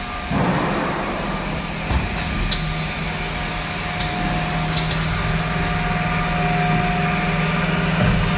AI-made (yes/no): no